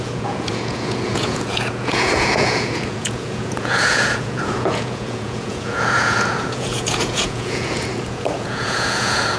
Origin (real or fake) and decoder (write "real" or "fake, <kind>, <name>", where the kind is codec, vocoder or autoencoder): fake, vocoder, Vocos